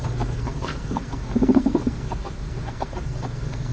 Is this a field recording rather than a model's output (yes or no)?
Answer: no